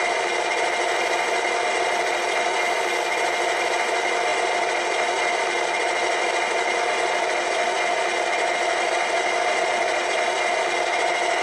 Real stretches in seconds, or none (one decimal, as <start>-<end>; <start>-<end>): 0.0-11.4